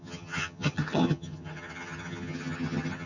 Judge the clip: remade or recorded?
remade